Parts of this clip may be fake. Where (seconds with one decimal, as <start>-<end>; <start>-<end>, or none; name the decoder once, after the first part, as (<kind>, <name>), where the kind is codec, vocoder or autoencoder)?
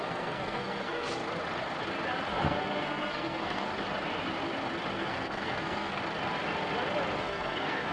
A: 0.0-1.2 (codec, SNAC); 2.3-3.7; 4.9-6.0; 7.2-7.9